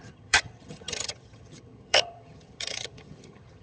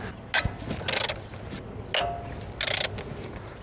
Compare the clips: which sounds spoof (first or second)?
first